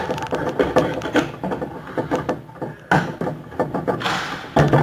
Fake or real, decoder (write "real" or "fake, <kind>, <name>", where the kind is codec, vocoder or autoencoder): real